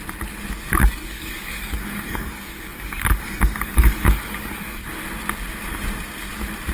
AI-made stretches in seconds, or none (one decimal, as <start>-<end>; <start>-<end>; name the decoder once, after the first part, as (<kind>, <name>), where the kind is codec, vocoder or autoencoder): 0.8-4.8 (codec, DAC)